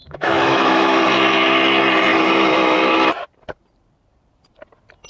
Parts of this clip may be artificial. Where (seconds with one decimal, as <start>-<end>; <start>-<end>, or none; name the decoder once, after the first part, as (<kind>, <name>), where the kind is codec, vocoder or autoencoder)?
0.0-1.0 (autoencoder, DAC-VAE); 2.1-3.1